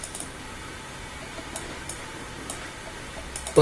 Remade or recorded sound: recorded